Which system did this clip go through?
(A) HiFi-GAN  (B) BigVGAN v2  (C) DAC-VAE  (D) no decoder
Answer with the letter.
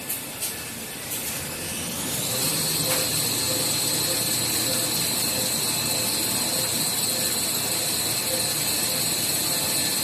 D